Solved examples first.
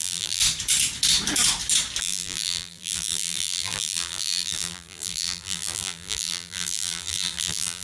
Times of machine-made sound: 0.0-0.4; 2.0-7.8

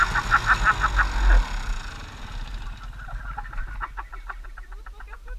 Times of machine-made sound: none

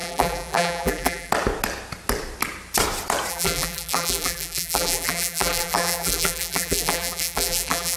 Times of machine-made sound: 0.0-1.3; 3.3-8.0

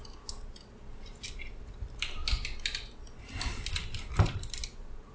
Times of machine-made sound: 0.0-2.2; 3.6-5.1